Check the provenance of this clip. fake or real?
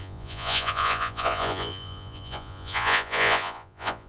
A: fake